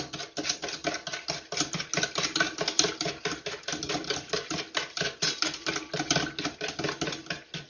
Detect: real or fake real